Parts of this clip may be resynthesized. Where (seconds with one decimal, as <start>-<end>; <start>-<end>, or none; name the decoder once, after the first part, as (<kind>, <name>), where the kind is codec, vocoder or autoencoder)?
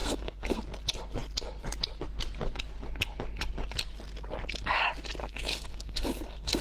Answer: 0.0-0.6 (codec, SNAC); 5.2-6.6